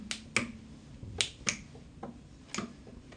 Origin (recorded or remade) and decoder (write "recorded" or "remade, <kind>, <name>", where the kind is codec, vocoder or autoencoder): recorded